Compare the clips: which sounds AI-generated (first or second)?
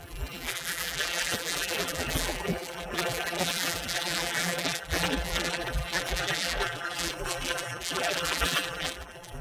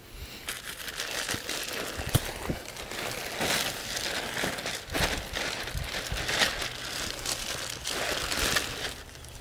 first